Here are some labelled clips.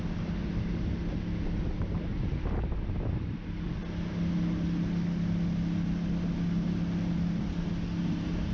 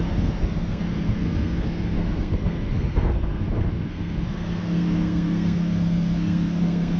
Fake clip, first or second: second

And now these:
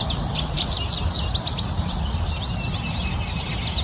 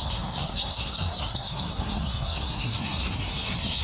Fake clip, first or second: second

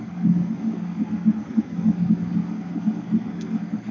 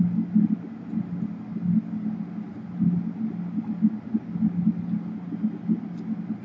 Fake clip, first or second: first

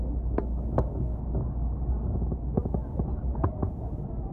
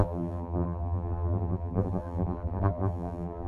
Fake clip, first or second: second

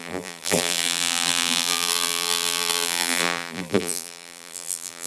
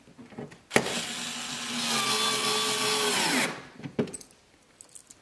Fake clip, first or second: first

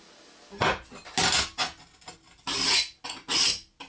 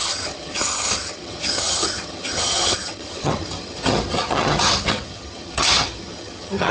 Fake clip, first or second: second